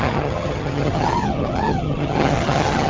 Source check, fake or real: fake